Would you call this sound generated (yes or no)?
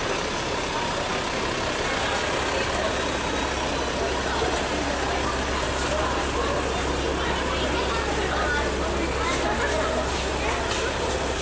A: no